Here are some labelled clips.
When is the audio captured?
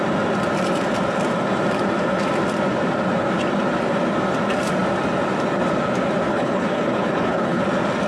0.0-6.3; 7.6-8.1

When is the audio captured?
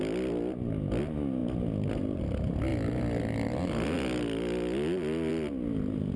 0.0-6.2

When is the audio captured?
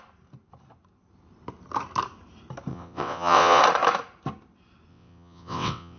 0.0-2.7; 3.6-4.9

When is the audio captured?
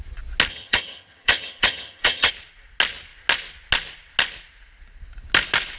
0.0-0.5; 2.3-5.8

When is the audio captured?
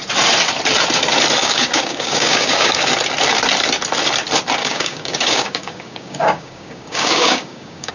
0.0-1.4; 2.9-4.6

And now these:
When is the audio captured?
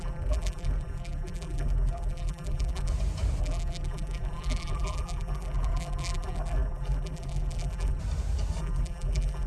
2.9-3.4; 8.0-8.6